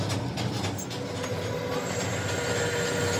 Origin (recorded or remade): recorded